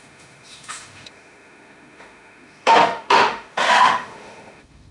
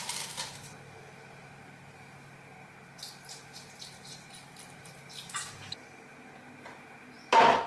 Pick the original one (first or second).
second